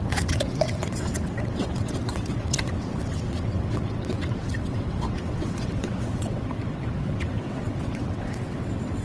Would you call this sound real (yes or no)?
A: no